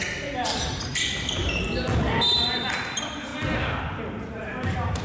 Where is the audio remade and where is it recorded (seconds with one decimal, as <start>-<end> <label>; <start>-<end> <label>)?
0.0-0.9 remade; 0.9-2.6 recorded; 2.6-3.3 remade; 3.3-4.3 recorded; 4.3-5.0 remade